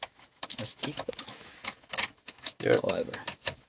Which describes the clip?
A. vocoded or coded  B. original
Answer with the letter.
A